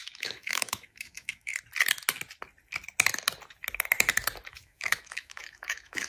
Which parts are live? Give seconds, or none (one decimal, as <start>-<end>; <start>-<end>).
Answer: 1.5-4.5